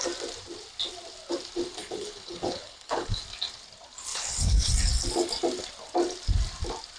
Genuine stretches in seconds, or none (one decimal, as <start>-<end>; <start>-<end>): 0.0-1.8; 3.2-4.1; 4.7-7.0